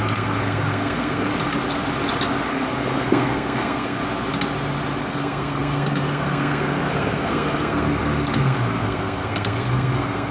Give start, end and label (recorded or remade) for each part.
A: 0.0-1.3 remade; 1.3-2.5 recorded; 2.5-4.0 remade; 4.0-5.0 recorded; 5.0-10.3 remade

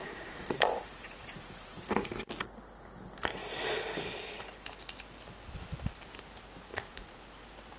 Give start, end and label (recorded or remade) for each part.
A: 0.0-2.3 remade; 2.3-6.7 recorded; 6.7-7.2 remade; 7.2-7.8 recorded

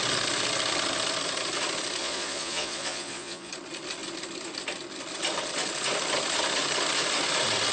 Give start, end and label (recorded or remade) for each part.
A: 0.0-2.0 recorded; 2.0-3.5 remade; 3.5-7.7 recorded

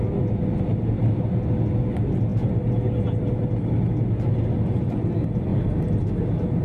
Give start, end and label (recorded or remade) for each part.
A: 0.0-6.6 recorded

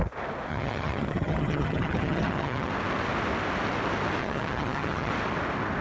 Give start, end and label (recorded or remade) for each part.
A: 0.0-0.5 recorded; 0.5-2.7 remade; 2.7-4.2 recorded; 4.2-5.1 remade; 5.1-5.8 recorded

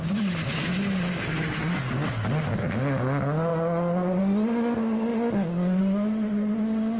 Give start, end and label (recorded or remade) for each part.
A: 0.0-7.0 recorded